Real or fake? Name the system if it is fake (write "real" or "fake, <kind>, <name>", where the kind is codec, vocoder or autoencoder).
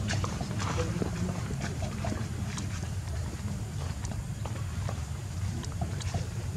fake, vocoder, BigVGAN v2